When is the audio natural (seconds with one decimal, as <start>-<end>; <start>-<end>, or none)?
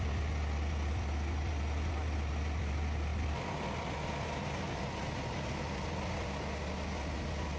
0.0-7.6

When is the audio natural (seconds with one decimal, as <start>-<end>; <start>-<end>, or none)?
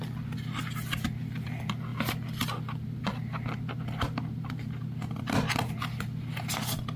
0.0-7.0